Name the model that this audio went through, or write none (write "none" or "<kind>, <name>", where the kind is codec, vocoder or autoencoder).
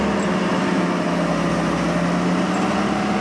none